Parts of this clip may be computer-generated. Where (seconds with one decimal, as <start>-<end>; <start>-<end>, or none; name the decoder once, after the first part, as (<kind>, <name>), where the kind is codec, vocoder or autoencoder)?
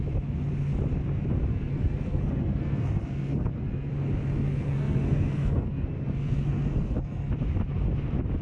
1.5-3.9 (codec, SNAC); 4.3-7.3